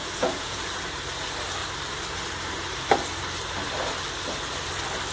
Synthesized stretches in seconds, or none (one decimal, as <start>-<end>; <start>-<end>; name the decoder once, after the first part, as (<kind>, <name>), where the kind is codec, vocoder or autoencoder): 0.0-0.7 (vocoder, Vocos)